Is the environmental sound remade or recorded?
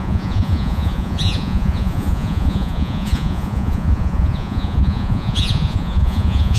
remade